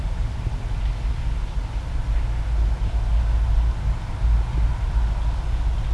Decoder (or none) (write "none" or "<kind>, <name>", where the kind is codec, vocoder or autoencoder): none